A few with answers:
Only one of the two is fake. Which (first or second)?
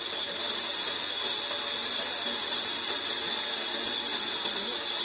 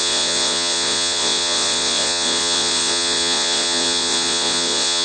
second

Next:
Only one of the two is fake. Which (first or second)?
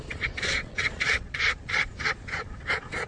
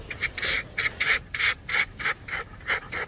first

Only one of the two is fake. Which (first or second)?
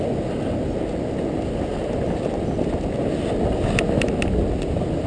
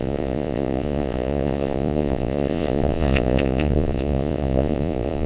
second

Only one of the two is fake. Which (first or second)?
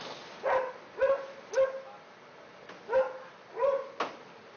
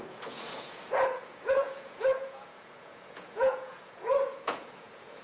second